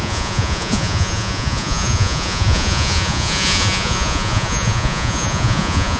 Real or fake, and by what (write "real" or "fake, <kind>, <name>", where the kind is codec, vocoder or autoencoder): fake, vocoder, Vocos